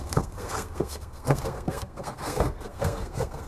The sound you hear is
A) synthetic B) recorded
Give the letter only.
A